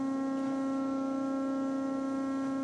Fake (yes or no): no